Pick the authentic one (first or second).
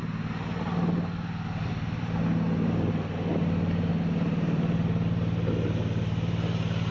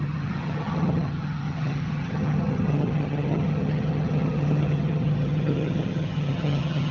first